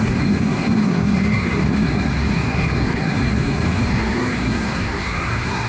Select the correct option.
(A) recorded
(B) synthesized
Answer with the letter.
B